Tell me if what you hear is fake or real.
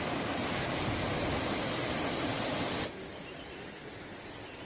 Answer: real